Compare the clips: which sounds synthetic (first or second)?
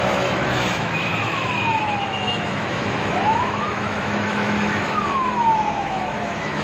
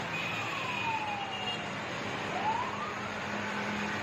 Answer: first